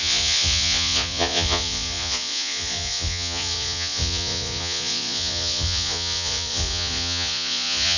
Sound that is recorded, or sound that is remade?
remade